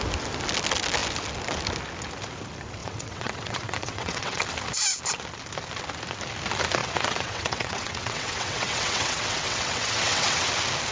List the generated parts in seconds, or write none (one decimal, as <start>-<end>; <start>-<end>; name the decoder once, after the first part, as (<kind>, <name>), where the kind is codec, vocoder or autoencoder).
2.8-4.4 (vocoder, WaveNeXt); 6.8-10.5